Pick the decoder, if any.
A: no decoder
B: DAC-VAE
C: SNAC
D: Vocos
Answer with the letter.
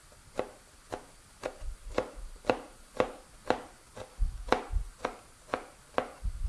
A